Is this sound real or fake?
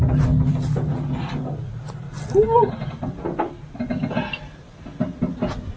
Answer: real